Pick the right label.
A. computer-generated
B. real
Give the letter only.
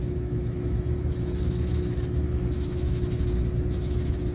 A